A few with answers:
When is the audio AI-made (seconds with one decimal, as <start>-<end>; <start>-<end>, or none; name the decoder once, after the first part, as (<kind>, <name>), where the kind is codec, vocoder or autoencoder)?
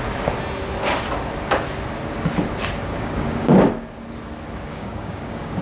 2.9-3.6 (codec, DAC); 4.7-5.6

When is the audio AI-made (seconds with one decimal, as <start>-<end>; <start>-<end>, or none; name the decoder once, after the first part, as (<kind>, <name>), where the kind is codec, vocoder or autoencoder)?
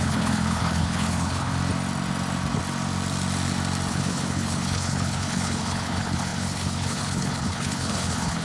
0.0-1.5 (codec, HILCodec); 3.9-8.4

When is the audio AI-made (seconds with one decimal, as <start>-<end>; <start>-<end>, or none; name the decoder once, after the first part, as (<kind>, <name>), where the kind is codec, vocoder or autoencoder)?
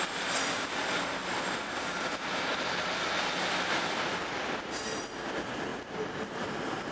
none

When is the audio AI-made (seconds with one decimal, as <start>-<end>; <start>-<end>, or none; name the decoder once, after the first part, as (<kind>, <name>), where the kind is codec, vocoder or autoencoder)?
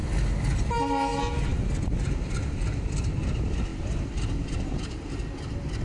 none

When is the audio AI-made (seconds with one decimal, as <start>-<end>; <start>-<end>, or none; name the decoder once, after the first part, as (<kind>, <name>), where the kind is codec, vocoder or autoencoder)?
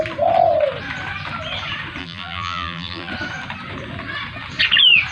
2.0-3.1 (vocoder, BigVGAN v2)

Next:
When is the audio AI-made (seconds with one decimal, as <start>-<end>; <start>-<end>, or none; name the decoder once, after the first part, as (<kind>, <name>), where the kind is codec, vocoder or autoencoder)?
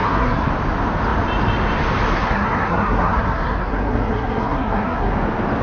0.0-0.5 (codec, SNAC); 2.1-5.1